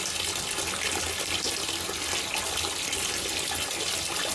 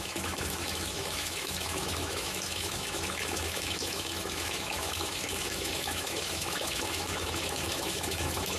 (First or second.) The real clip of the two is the first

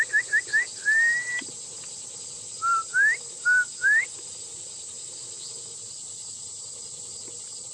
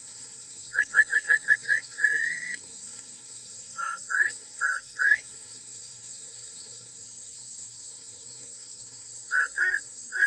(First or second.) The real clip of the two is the first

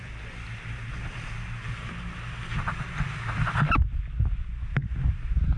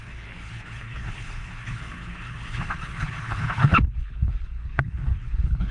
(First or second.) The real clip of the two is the first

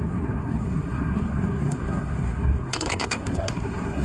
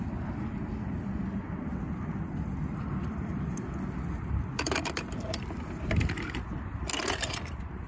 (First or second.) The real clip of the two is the second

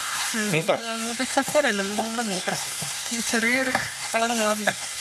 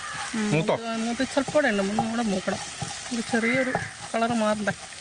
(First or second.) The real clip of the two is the second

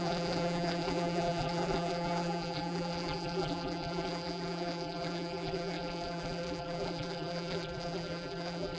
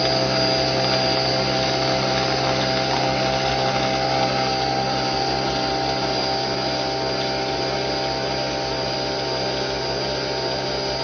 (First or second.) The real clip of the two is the second